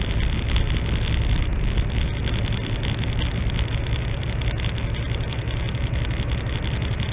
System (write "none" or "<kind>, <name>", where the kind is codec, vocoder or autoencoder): none